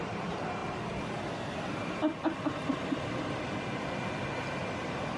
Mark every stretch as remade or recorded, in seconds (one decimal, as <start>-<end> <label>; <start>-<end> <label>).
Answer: 0.0-0.6 recorded; 0.6-3.7 remade; 3.7-4.6 recorded; 4.6-5.2 remade